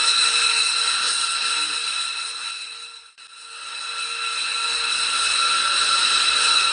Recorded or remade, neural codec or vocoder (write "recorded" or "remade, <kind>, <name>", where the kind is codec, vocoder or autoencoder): recorded